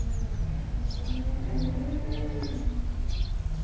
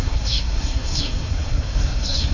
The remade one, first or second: second